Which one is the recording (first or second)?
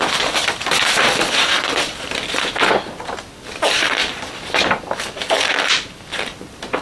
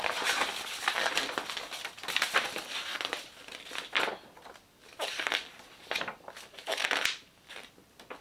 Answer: second